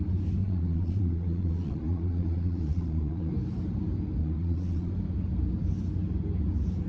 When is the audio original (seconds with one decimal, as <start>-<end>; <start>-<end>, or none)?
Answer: 0.0-0.4; 3.3-4.2; 4.9-6.9